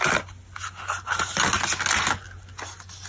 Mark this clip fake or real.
real